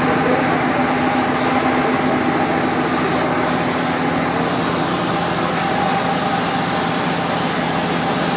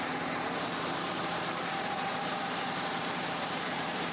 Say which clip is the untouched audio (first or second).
first